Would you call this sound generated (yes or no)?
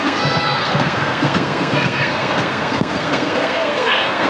yes